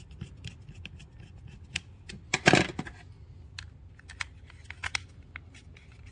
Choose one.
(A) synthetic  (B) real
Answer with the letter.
B